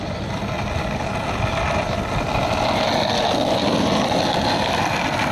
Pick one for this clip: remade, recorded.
recorded